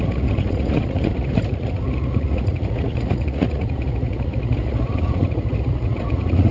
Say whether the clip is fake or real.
fake